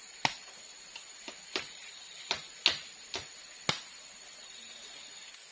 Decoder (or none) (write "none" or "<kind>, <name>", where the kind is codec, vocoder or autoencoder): none